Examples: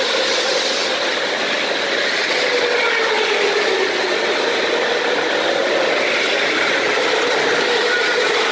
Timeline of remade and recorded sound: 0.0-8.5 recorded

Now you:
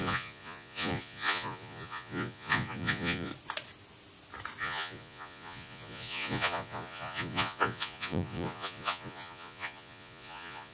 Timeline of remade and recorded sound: 0.0-3.3 remade; 3.3-4.6 recorded; 4.6-10.7 remade

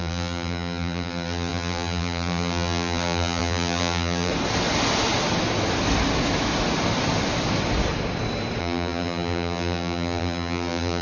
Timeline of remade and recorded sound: 0.0-4.3 remade; 4.3-8.6 recorded; 8.6-11.0 remade

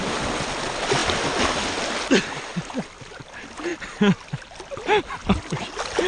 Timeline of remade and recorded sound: 0.0-6.1 recorded

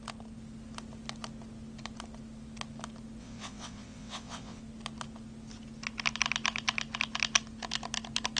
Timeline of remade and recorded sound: 0.0-3.2 recorded; 3.2-4.6 remade; 4.6-8.4 recorded

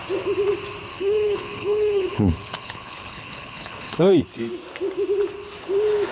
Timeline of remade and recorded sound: 0.0-0.9 recorded; 0.9-4.2 remade; 4.2-6.1 recorded

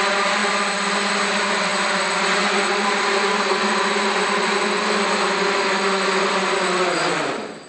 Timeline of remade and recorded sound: 0.0-7.7 recorded

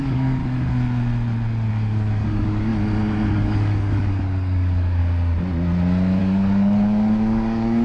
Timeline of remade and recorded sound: 0.0-0.4 remade; 0.4-1.7 recorded; 1.7-2.7 remade; 2.7-3.3 recorded; 3.3-5.0 remade; 5.0-6.2 recorded; 6.2-7.8 remade